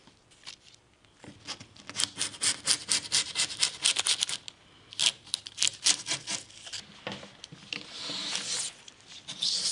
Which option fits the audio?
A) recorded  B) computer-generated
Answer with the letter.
A